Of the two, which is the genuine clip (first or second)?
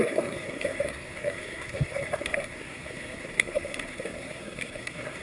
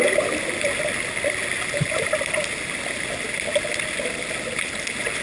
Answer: second